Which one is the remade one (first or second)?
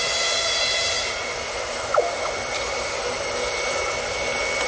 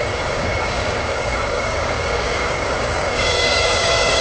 second